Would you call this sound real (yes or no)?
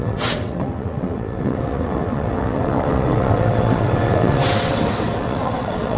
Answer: no